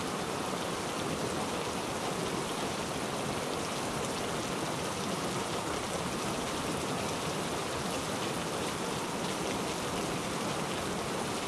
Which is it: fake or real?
real